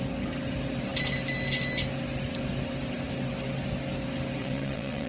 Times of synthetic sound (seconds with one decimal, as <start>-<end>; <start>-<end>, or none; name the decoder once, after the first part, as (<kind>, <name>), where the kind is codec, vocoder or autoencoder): 4.4-5.1 (vocoder, WaveNeXt)